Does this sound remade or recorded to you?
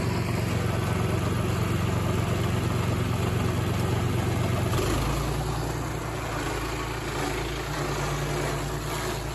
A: recorded